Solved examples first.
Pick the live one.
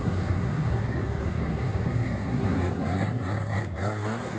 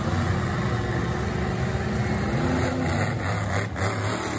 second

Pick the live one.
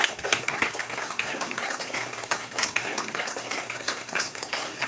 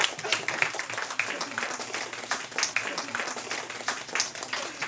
second